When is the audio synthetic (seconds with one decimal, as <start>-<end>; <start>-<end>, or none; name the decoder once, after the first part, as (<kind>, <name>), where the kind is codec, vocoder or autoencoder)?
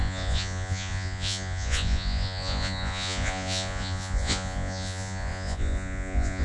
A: 0.0-6.4 (vocoder, Vocos)